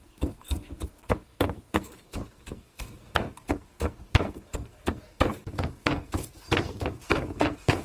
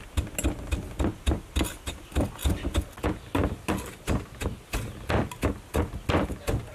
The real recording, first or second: second